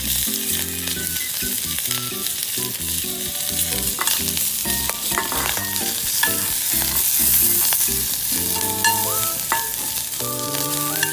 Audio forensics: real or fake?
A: real